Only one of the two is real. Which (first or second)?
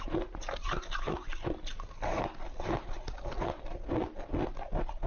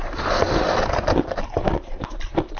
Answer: first